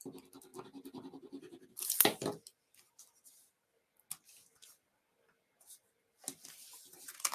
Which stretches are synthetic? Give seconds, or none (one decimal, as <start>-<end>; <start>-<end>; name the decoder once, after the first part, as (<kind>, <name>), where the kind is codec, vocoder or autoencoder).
none